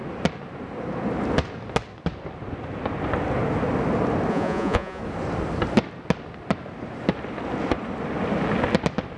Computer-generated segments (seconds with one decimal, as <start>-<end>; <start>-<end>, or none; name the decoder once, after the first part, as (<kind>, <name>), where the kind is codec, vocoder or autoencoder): 4.3-5.0 (vocoder, Vocos)

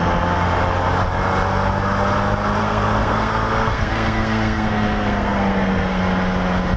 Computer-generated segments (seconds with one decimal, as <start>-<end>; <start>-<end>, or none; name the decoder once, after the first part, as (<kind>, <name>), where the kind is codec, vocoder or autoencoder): 2.6-6.0 (codec, SNAC)

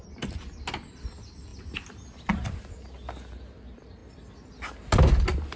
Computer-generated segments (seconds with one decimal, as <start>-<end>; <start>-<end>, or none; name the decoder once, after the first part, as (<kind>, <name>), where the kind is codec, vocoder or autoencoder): none

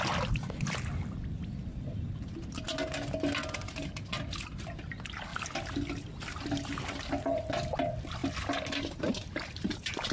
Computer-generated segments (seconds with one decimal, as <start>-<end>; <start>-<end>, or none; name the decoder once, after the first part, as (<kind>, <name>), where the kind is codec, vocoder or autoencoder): none

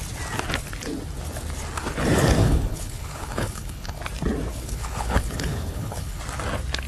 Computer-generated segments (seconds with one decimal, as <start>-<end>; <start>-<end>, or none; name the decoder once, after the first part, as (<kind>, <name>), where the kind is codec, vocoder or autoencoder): 2.4-4.0 (codec, HILCodec); 4.5-6.2

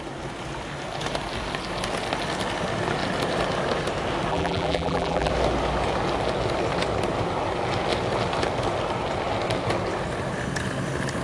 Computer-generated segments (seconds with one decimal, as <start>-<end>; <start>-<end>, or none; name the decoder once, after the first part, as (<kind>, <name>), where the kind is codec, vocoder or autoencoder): 4.3-5.3 (vocoder, BigVGAN v2)